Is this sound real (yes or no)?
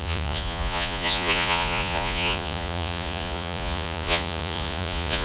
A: no